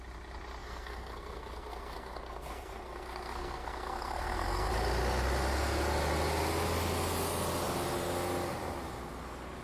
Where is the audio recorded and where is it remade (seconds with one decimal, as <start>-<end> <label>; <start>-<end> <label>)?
0.0-0.6 recorded; 0.6-4.7 remade; 4.7-9.6 recorded